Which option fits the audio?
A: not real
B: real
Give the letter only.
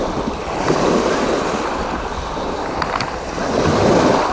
B